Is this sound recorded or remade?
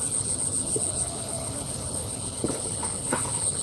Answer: remade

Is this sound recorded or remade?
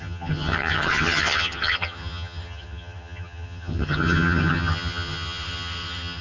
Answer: remade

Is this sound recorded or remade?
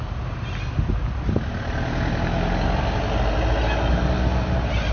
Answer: recorded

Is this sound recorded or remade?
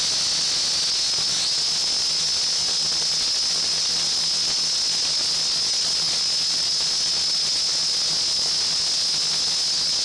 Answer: recorded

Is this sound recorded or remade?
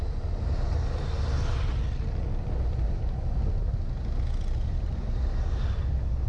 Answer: recorded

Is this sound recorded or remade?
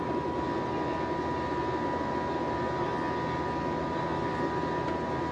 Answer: recorded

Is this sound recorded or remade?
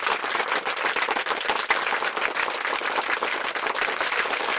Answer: recorded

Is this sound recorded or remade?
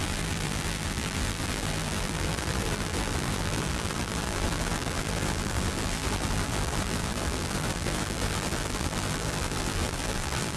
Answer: remade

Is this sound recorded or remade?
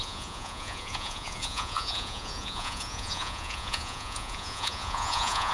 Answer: remade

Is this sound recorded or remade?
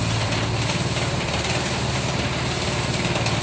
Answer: recorded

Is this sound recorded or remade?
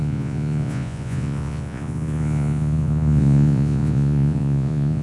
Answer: remade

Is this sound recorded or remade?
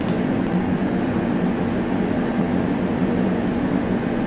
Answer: remade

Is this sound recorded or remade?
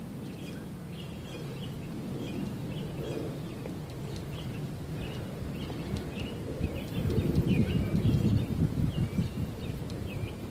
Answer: recorded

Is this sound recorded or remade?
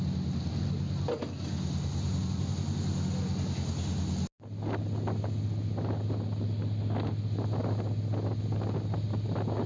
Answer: recorded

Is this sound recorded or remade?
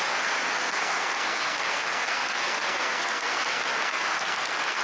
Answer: remade